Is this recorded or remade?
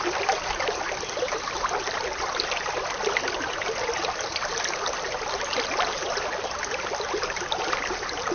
recorded